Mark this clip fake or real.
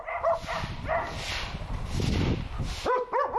real